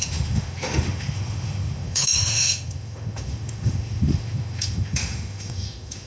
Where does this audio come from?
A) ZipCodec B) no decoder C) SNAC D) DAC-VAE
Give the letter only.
D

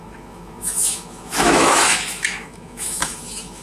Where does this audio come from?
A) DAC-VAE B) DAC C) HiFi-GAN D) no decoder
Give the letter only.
A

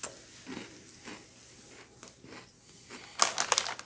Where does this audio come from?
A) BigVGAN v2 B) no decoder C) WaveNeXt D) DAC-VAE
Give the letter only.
B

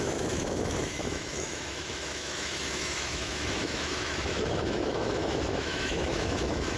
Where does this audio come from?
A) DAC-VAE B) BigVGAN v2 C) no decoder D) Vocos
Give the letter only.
A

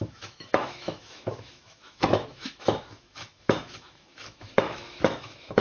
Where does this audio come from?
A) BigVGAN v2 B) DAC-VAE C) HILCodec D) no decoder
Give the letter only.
B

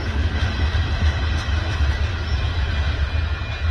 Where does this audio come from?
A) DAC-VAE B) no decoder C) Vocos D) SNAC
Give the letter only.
B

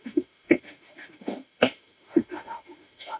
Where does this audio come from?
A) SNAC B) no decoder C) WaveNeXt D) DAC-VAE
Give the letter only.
D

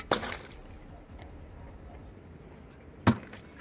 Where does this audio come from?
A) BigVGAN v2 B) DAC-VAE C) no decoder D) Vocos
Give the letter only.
C